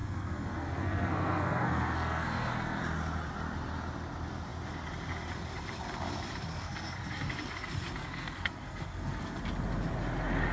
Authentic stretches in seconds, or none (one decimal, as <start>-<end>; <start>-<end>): 2.8-6.5; 7.3-8.0; 9.4-10.5